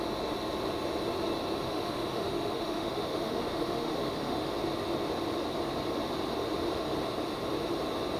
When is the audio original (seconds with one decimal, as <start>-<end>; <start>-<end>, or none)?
0.0-1.6; 4.5-8.2